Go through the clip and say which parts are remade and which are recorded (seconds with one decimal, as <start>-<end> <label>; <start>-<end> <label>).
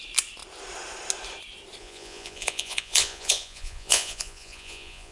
0.0-1.8 recorded; 1.8-5.1 remade